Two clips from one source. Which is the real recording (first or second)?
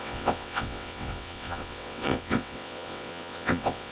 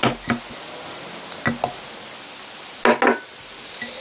second